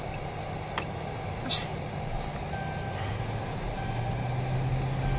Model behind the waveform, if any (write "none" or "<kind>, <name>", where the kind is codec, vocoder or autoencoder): none